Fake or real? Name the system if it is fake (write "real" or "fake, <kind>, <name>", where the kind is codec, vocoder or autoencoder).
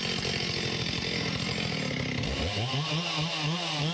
real